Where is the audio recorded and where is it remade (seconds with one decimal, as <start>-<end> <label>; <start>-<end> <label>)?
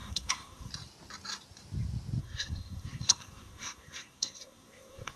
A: 0.0-0.7 remade; 0.7-2.2 recorded; 2.2-5.2 remade